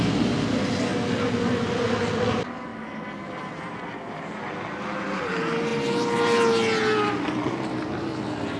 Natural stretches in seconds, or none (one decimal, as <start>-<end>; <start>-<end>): 0.0-8.6